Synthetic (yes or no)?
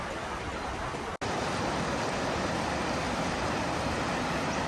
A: no